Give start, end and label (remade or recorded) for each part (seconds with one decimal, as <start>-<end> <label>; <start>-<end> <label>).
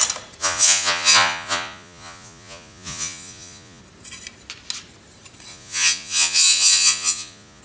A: 0.0-0.4 recorded; 0.4-3.8 remade; 3.8-5.5 recorded; 5.5-7.6 remade